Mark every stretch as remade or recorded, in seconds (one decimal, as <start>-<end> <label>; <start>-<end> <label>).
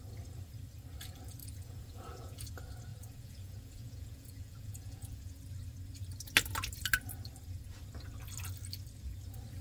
0.0-1.4 recorded; 1.4-2.5 remade; 2.5-2.9 recorded; 2.9-5.4 remade; 5.4-9.6 recorded